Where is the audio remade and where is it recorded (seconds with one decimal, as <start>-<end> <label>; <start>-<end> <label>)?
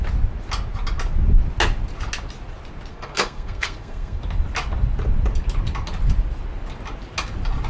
0.0-2.9 recorded; 2.9-4.2 remade; 4.2-7.7 recorded